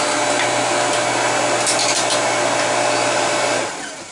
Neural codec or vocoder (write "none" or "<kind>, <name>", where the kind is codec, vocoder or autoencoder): none